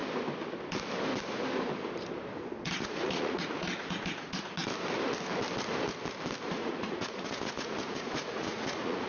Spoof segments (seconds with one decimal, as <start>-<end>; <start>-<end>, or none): 2.6-4.6; 6.5-9.1